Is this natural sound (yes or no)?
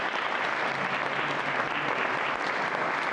yes